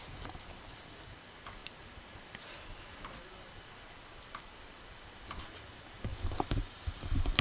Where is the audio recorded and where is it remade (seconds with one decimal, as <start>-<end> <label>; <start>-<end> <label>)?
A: 0.0-7.4 recorded